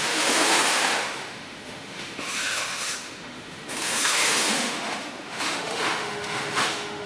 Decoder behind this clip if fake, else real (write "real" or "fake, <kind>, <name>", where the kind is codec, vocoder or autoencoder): fake, autoencoder, DAC-VAE